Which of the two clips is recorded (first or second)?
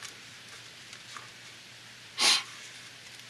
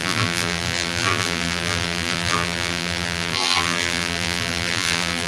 first